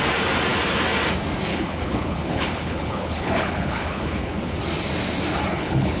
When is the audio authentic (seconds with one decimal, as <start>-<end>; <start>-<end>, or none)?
0.0-1.5; 4.6-5.5

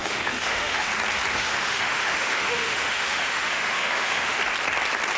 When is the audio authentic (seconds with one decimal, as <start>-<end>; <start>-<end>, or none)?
0.9-1.3; 4.4-5.2

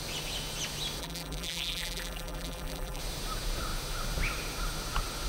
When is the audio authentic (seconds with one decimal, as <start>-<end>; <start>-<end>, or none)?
0.0-1.0; 3.0-5.3

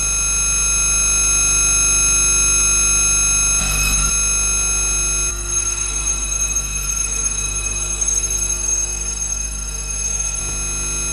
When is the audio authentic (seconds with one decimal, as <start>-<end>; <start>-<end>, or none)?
0.0-3.6; 4.1-5.3; 10.4-11.1